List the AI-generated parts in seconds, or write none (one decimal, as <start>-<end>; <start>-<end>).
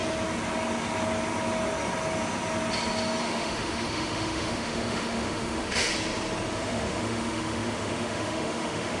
3.2-5.9; 6.5-9.0